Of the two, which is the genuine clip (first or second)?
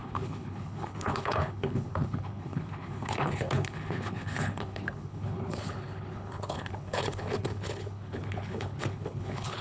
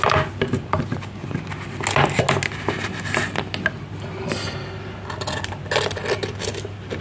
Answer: second